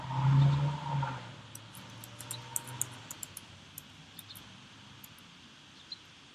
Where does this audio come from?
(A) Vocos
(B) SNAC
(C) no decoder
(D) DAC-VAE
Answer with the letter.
C